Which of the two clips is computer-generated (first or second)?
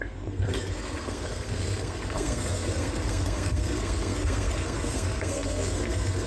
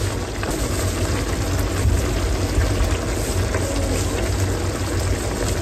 first